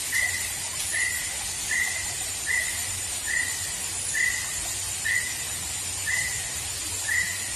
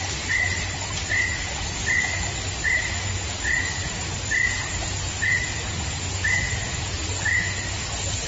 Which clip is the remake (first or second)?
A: first